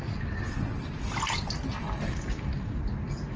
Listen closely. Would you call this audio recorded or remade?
recorded